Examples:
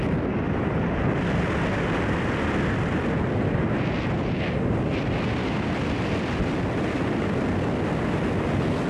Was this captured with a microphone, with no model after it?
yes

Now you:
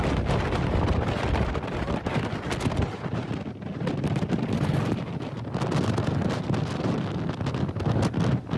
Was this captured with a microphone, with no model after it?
yes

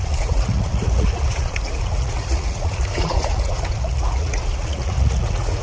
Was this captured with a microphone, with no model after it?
no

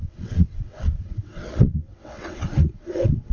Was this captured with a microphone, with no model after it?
no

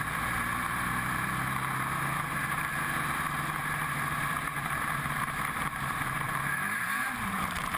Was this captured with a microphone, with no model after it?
no